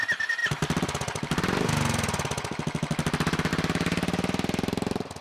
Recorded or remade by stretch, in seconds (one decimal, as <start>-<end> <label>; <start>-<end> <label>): 0.0-5.2 recorded